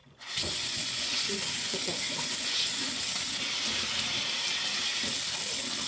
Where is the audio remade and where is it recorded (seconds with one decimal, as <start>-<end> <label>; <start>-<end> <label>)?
0.0-3.5 remade; 3.5-5.9 recorded